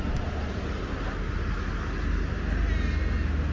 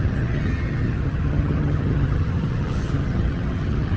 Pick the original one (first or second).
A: first